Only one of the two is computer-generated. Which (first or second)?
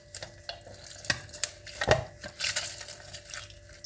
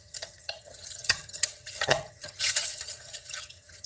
second